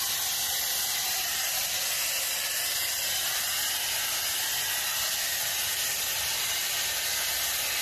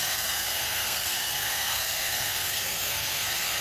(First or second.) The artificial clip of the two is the second